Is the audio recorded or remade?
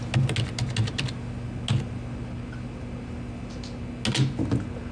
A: recorded